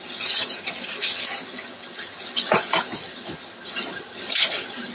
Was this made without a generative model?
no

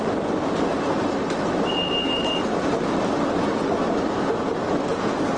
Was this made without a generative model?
yes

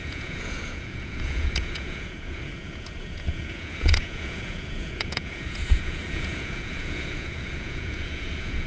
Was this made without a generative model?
no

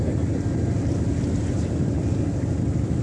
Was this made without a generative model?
yes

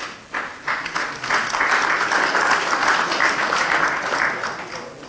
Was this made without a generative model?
yes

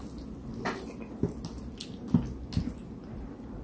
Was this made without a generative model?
yes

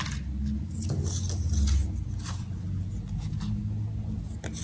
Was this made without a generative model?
yes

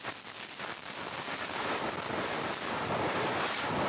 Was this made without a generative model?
yes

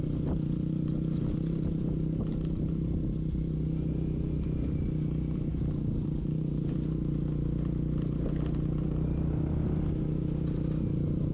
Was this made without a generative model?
yes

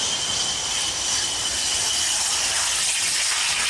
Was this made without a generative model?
yes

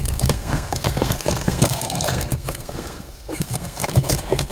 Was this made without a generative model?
no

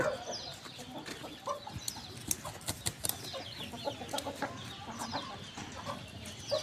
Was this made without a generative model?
yes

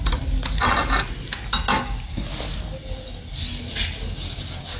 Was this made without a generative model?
yes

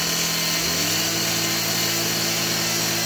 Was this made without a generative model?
yes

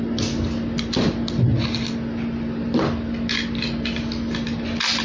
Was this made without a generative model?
yes